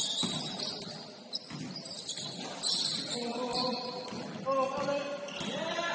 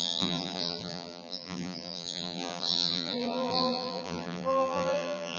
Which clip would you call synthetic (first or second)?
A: second